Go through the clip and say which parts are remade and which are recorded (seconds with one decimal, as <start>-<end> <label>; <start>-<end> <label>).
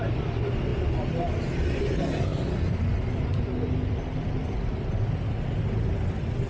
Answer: 0.0-6.5 recorded